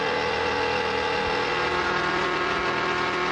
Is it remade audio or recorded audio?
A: recorded